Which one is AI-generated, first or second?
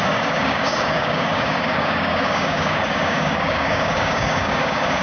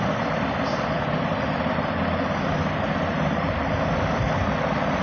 first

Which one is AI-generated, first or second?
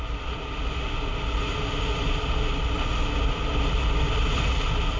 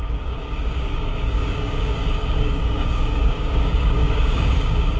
second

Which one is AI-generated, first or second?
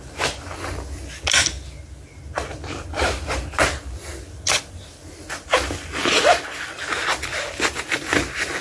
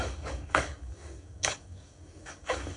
second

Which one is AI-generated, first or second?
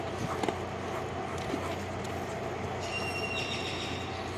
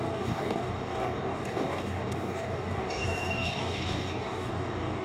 second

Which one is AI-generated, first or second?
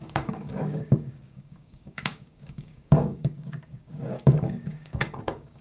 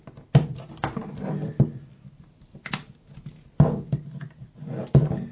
first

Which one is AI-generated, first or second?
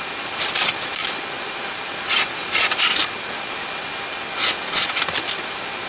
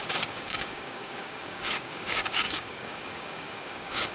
second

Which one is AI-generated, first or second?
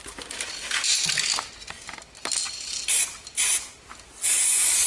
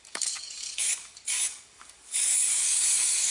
second